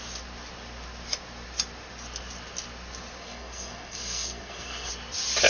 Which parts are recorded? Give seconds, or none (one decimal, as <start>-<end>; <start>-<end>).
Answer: 0.0-3.2; 4.9-5.5